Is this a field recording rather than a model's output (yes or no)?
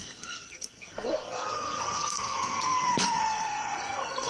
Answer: no